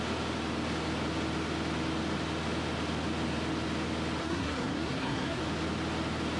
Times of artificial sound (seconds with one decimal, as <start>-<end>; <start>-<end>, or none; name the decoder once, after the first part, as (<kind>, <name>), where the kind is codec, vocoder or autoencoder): 4.2-5.4 (codec, SNAC)